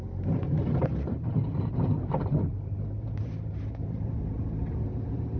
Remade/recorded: remade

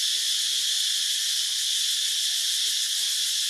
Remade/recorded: recorded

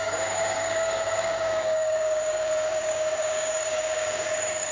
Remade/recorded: remade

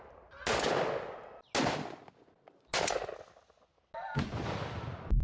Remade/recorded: recorded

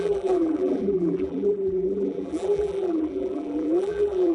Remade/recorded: remade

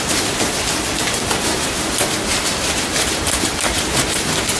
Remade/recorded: recorded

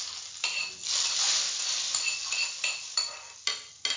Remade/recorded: recorded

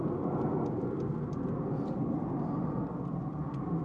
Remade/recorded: recorded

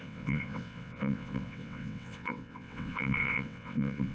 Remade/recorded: remade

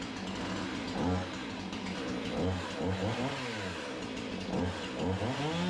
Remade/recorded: recorded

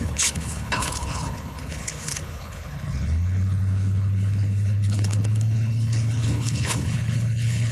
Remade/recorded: remade